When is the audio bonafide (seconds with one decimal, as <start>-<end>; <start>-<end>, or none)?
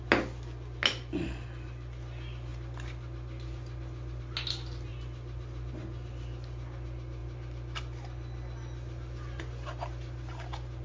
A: 0.0-10.8